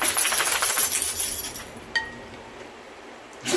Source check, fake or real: real